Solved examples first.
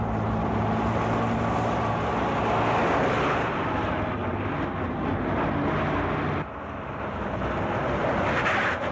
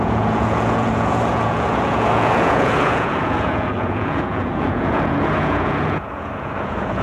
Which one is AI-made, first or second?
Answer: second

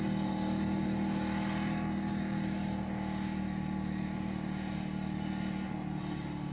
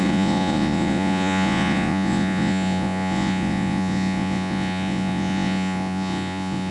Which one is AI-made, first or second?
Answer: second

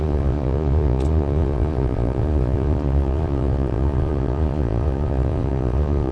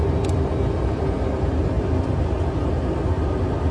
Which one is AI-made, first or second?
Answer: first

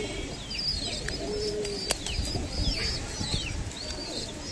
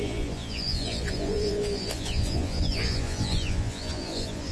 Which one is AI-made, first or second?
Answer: second